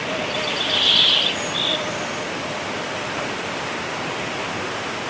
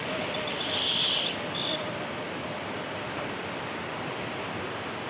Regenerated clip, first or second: second